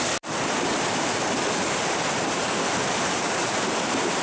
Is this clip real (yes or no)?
yes